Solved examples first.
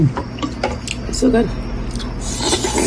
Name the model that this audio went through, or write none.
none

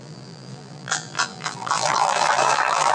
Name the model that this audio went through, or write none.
vocoder, BigVGAN v2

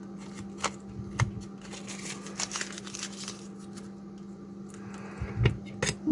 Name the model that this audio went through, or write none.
none